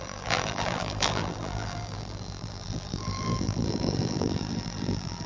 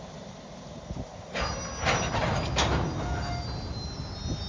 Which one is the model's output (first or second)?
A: first